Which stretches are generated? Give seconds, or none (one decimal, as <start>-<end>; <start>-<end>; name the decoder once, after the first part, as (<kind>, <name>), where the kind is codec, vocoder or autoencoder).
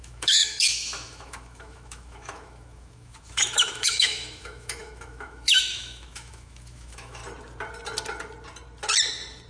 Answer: 0.0-7.2 (autoencoder, DAC-VAE)